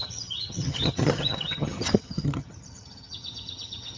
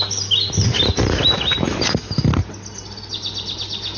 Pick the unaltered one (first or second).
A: second